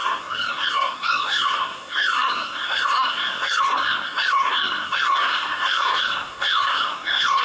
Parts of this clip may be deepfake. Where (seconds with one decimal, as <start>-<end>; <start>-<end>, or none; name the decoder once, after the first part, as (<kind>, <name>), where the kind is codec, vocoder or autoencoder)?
0.0-7.4 (codec, SNAC)